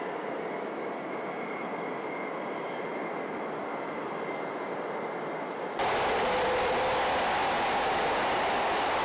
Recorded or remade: recorded